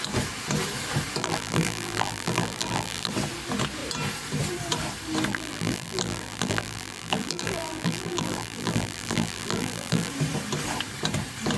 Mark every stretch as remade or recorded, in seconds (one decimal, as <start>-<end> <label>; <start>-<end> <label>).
0.0-1.2 recorded; 1.2-3.1 remade; 3.1-5.3 recorded; 5.3-10.1 remade; 10.1-11.6 recorded